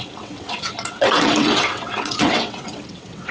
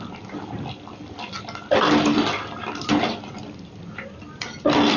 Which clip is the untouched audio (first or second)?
second